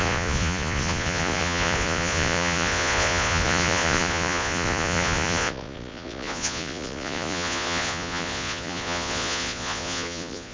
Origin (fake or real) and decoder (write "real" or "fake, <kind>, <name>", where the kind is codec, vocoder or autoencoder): fake, vocoder, Vocos